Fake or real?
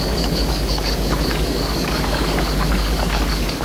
fake